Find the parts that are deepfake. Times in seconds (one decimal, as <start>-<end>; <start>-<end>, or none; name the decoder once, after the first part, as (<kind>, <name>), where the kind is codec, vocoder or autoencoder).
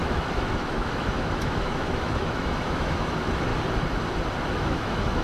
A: 0.0-3.5 (autoencoder, DAC-VAE); 4.5-5.2